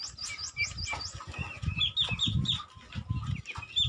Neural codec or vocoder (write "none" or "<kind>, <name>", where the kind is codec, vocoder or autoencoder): none